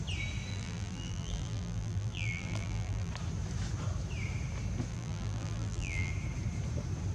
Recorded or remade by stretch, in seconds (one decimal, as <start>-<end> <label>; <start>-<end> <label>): 0.0-0.5 recorded; 0.5-3.1 remade; 3.1-4.9 recorded; 4.9-6.1 remade; 6.1-7.1 recorded